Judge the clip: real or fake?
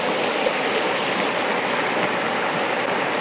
real